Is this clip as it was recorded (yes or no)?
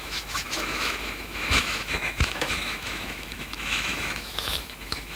no